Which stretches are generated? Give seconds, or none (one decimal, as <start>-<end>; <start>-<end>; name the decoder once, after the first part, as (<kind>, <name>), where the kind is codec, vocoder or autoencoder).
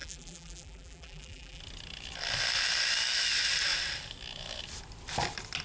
0.0-1.6 (vocoder, BigVGAN v2)